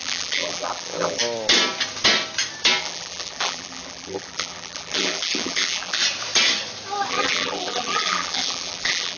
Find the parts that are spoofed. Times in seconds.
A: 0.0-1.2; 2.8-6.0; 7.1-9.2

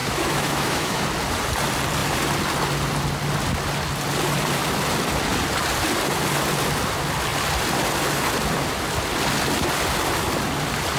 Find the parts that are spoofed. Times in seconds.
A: 0.0-1.0

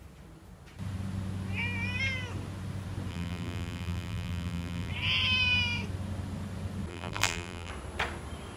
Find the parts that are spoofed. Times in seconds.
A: 3.1-4.9; 6.9-7.7

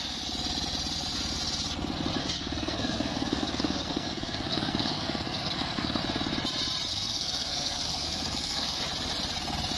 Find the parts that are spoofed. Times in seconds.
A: 2.2-6.0; 6.9-8.8

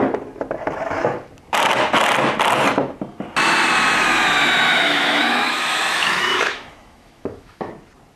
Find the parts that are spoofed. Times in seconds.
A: 4.7-7.7